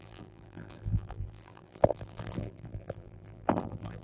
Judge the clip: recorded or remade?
remade